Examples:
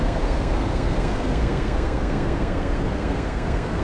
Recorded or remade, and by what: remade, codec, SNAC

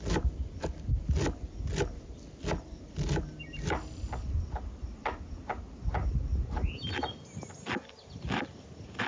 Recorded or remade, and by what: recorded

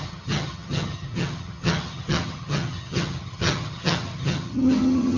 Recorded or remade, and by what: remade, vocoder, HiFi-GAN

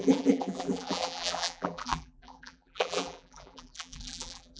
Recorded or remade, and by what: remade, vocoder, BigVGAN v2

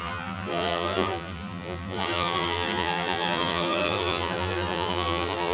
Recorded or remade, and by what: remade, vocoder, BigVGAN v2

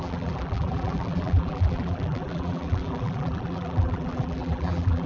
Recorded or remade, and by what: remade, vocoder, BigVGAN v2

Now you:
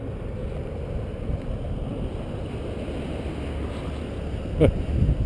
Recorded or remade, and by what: recorded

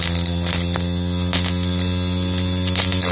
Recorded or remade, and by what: recorded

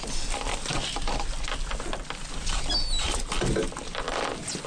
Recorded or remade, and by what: recorded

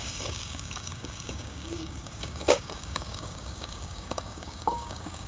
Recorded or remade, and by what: remade, codec, DAC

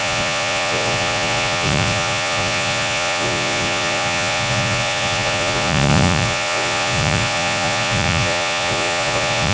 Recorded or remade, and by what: remade, vocoder, Vocos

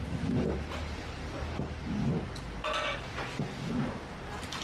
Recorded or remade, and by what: recorded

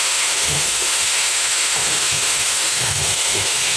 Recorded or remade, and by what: remade, autoencoder, DAC-VAE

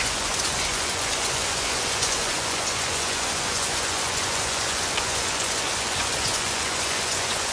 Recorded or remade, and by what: remade, vocoder, Vocos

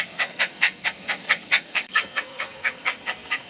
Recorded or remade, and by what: remade, codec, SNAC